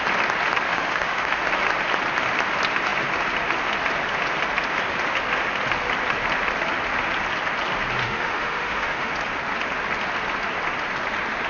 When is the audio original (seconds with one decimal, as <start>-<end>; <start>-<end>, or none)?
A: 0.0-0.7; 1.4-8.0; 9.1-11.5

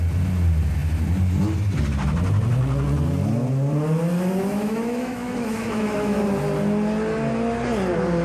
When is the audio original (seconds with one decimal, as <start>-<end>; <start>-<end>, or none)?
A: 0.0-4.4; 6.2-8.2

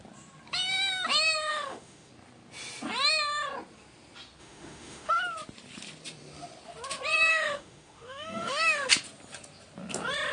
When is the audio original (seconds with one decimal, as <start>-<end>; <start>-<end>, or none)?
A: 0.0-1.5; 2.1-4.4; 5.1-7.3; 8.9-10.3

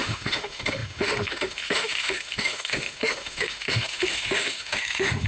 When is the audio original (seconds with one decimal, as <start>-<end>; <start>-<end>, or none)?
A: none

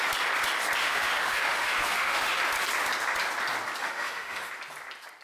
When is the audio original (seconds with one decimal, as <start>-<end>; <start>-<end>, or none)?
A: 0.0-0.8; 2.4-3.8; 4.5-5.2

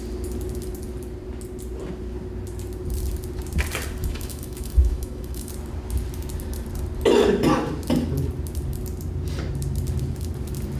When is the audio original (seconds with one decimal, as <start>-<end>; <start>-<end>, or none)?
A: 0.0-4.0; 5.5-10.8

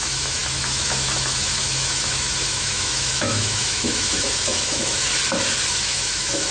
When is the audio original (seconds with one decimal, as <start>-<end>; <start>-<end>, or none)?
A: 5.1-5.7